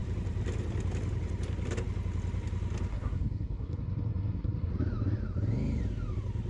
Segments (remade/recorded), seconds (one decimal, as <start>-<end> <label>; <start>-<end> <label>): 0.0-2.9 recorded; 2.9-4.7 remade; 4.7-6.5 recorded